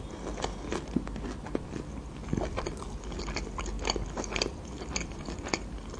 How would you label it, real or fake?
real